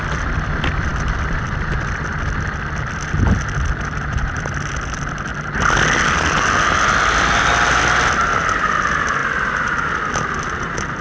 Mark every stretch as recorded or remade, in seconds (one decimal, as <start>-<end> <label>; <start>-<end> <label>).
0.0-11.0 recorded